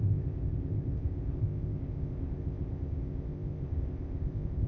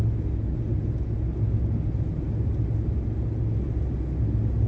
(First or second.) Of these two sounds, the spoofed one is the first